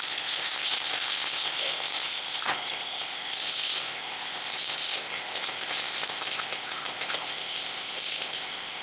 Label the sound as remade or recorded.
remade